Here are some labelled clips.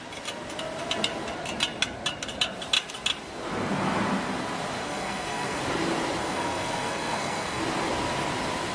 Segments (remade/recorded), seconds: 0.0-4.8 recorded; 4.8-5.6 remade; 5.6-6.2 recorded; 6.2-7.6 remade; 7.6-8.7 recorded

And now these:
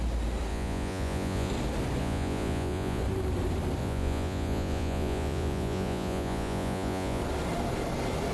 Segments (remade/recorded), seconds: 0.0-0.5 recorded; 0.5-1.5 remade; 1.5-2.0 recorded; 2.0-3.0 remade; 3.0-3.8 recorded; 3.8-7.2 remade; 7.2-8.3 recorded

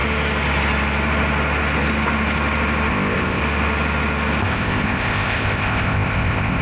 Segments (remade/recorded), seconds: 0.0-2.9 recorded; 2.9-3.4 remade; 3.4-4.4 recorded; 4.4-6.6 remade

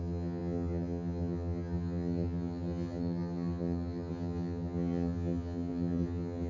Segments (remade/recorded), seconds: 0.0-6.5 remade

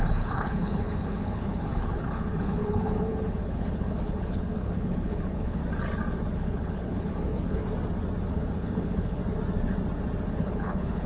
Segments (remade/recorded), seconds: 0.0-5.6 remade; 5.6-6.3 recorded; 6.3-7.6 remade; 7.6-8.3 recorded; 8.3-9.2 remade; 9.2-10.3 recorded; 10.3-11.1 remade

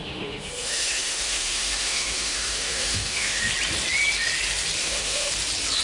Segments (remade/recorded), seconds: 0.0-3.5 remade; 3.5-4.8 recorded; 4.8-5.3 remade; 5.3-5.8 recorded

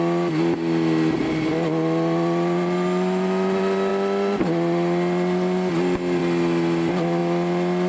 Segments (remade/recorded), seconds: 0.0-7.9 recorded